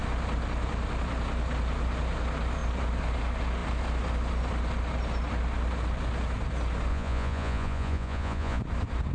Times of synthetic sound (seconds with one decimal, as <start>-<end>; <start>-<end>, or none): 6.9-8.6